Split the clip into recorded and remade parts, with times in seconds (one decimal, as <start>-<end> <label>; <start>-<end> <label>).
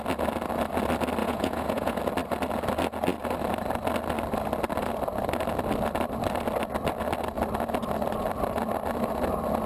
0.0-1.2 recorded; 1.2-2.0 remade; 2.0-9.7 recorded